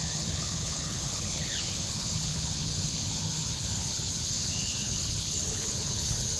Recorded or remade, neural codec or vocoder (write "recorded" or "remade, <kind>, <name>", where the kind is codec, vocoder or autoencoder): remade, codec, HILCodec